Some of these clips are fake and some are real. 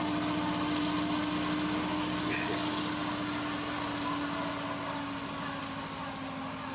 real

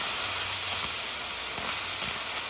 real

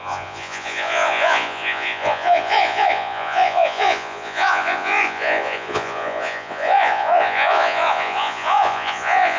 fake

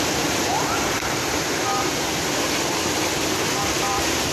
fake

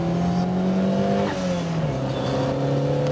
real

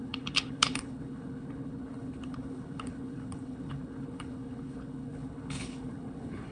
fake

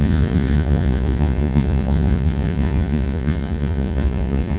fake